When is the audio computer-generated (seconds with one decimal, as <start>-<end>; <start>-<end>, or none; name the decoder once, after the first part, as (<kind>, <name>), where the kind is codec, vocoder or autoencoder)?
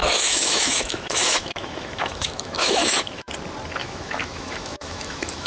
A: 0.0-3.3 (autoencoder, DAC-VAE); 3.8-5.5